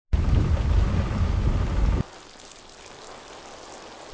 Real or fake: real